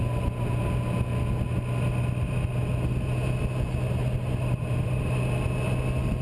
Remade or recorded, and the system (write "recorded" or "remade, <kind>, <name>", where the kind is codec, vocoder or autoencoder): recorded